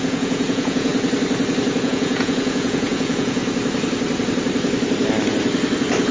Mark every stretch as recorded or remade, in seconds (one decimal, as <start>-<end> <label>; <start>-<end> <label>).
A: 0.0-0.9 remade; 0.9-1.8 recorded; 1.8-3.4 remade; 3.4-6.1 recorded